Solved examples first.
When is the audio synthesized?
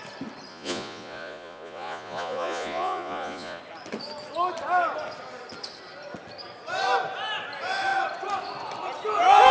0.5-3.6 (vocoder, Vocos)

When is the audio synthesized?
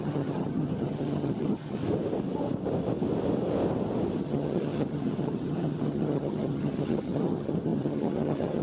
0.0-1.8 (vocoder, HiFi-GAN); 4.2-8.6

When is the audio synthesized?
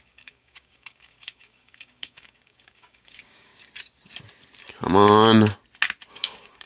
0.0-3.5 (codec, DAC); 6.1-6.7